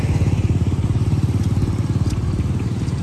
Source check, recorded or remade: recorded